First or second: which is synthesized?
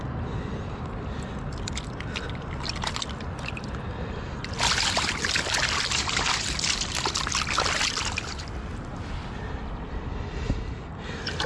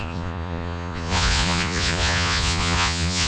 second